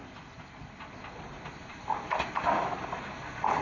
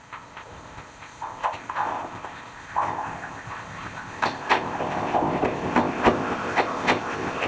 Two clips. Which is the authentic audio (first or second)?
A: first